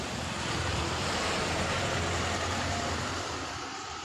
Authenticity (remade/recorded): remade